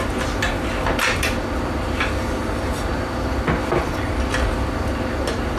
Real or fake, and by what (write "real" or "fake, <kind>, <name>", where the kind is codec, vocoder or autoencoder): real